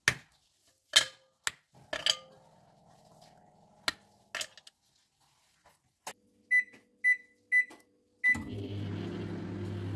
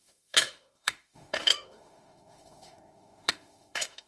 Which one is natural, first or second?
first